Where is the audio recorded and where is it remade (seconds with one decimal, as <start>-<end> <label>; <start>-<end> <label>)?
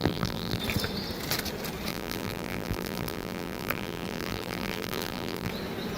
0.0-0.6 remade; 0.6-1.9 recorded; 1.9-5.5 remade; 5.5-6.0 recorded